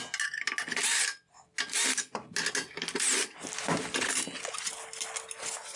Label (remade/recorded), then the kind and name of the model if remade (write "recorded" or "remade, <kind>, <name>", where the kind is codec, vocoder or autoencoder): recorded